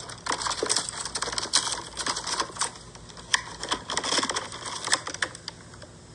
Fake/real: real